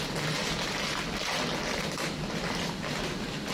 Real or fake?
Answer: real